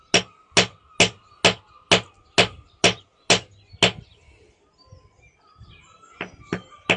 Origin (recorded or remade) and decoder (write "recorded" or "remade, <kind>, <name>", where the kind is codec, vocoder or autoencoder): recorded